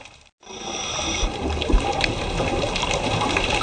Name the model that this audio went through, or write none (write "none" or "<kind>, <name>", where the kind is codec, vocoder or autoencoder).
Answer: none